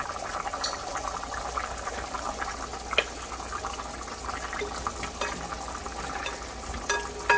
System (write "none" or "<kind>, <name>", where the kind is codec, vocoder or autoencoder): none